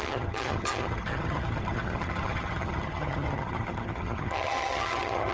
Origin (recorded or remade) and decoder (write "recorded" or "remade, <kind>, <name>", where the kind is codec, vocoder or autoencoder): remade, vocoder, HiFi-GAN